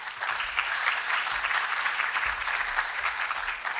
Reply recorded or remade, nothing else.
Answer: remade